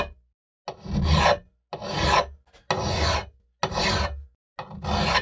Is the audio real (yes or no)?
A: yes